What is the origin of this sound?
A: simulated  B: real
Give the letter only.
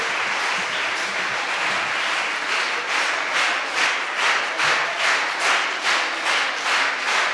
B